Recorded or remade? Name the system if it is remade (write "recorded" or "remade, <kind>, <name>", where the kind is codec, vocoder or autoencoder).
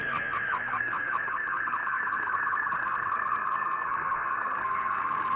remade, codec, SNAC